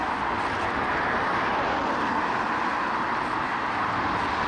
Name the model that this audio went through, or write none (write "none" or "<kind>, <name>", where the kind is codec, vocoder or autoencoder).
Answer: none